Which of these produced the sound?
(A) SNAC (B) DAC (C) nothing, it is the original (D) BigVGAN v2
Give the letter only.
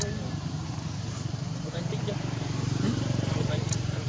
D